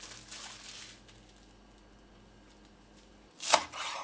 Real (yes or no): yes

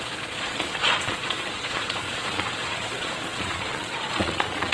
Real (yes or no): no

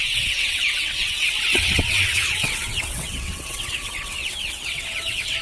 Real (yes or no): no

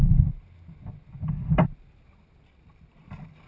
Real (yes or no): yes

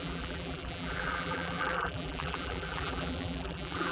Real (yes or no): no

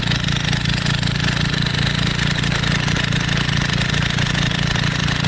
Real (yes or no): yes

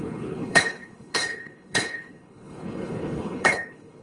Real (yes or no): no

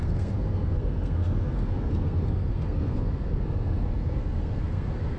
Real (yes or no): no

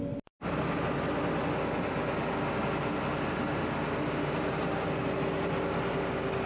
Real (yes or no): yes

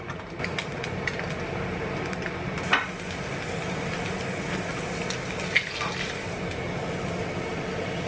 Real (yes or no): yes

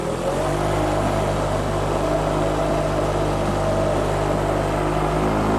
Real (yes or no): yes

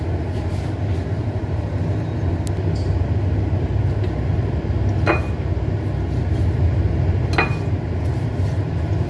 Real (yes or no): yes